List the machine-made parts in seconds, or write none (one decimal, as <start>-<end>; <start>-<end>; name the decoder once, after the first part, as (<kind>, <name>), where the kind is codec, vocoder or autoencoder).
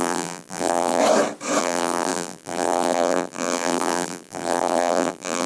0.0-1.0 (vocoder, BigVGAN v2); 1.6-5.5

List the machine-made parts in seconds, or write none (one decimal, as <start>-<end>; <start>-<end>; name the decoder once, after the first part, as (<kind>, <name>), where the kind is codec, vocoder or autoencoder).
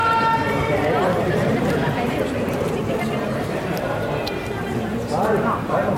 0.6-6.0 (vocoder, BigVGAN v2)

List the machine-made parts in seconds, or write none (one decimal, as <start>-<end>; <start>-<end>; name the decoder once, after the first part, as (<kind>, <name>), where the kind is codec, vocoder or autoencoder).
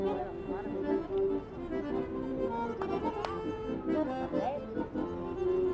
2.3-3.0 (vocoder, BigVGAN v2)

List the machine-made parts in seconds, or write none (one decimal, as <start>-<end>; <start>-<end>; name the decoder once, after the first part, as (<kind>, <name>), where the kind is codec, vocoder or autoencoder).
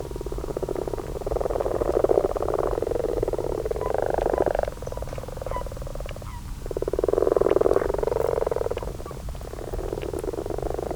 none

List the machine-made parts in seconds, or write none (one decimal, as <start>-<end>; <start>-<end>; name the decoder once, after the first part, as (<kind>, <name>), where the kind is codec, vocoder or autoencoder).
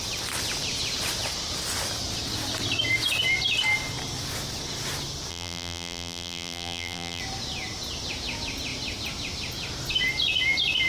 5.3-7.2 (vocoder, BigVGAN v2)